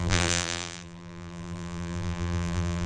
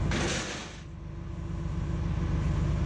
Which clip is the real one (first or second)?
second